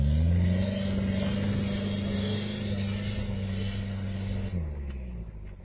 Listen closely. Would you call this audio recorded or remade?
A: recorded